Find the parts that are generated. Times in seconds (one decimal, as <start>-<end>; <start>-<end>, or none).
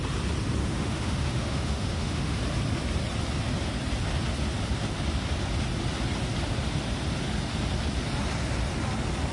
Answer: 0.6-2.4